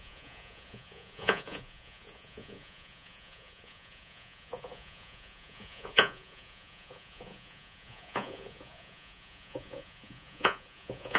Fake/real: fake